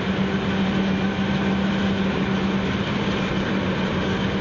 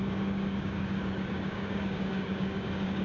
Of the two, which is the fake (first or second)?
second